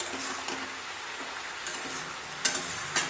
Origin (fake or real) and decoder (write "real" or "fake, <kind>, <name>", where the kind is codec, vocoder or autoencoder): real